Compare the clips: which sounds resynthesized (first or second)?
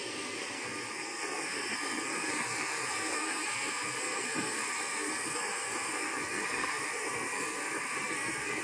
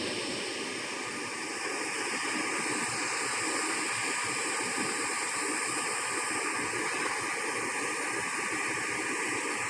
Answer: first